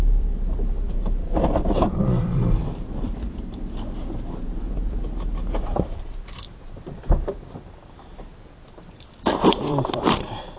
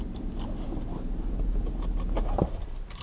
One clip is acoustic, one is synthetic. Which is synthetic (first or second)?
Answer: first